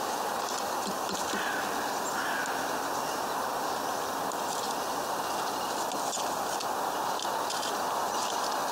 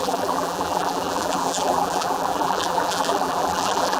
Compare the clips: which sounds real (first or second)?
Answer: first